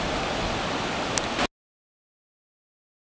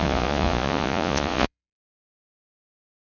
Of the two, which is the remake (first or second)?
second